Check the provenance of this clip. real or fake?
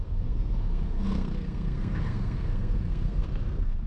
fake